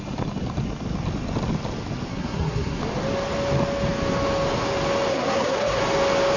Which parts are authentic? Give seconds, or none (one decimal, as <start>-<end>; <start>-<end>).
0.0-2.1; 2.8-5.1; 5.8-6.4